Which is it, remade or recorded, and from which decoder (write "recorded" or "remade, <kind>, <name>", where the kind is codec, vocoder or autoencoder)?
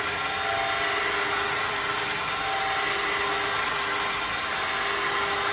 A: recorded